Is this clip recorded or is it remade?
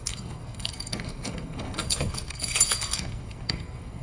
remade